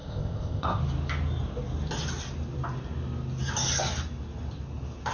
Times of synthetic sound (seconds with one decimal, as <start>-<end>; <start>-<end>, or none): 0.0-0.8